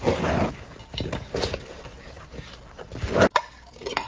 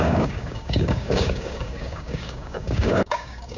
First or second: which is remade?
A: second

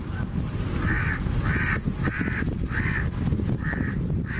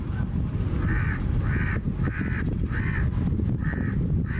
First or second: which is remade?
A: second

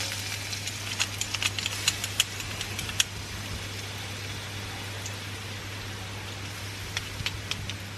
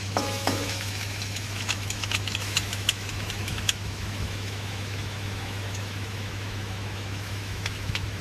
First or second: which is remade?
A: second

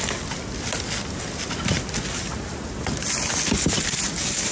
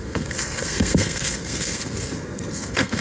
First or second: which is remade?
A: second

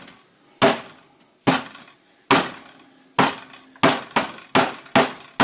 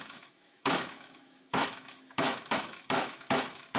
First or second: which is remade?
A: second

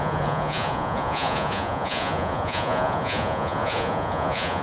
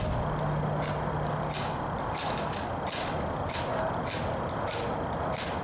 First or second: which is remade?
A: first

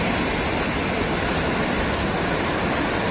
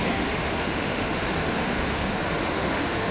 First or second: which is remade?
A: second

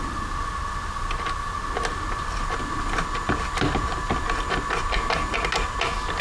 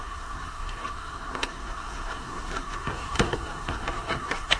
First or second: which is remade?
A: second